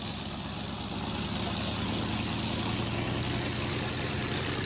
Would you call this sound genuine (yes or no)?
yes